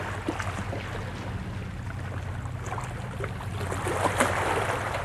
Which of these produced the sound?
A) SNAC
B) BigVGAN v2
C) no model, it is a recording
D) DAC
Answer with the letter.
C